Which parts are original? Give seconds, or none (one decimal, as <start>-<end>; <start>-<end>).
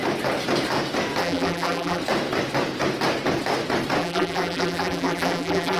0.0-1.2; 2.0-4.0